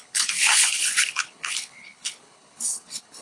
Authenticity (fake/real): fake